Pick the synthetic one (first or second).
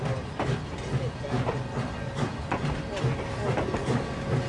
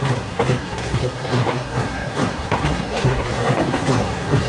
second